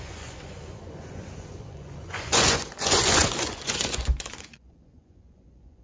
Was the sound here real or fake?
fake